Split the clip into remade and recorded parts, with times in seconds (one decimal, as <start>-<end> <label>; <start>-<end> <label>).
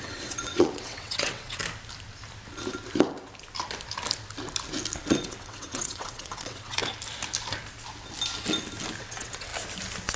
0.0-1.6 remade; 1.6-5.0 recorded; 5.0-6.8 remade; 6.8-9.0 recorded; 9.0-9.5 remade; 9.5-10.2 recorded